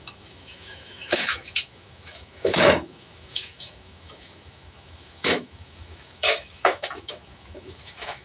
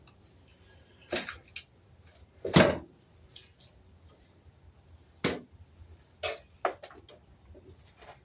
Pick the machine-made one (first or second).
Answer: first